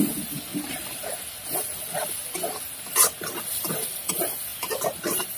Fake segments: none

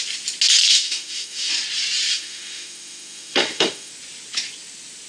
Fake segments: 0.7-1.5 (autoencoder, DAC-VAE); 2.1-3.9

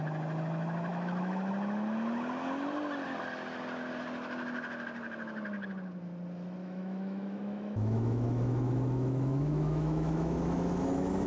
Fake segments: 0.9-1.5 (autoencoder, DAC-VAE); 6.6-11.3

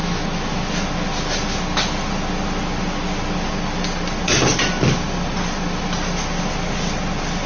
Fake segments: 0.0-0.7 (autoencoder, DAC-VAE)

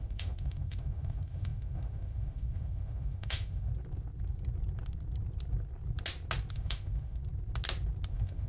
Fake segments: 0.0-3.7 (autoencoder, DAC-VAE); 6.5-7.2; 8.1-8.5

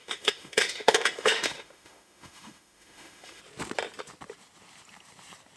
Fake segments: 0.0-3.4 (autoencoder, DAC-VAE)

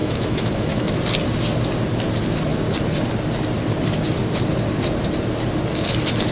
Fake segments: 0.0-1.0 (autoencoder, DAC-VAE)

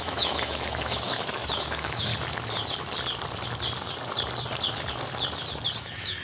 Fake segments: 0.0-2.1 (autoencoder, DAC-VAE); 5.8-6.2